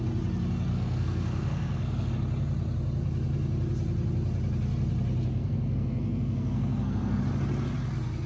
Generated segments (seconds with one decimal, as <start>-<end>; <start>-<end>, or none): 0.7-2.1; 5.3-7.2